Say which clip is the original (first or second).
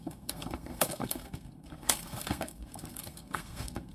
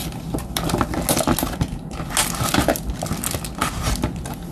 second